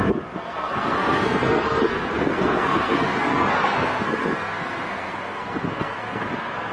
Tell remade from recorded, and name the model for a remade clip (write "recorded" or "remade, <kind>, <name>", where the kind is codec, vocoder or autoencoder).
remade, codec, SNAC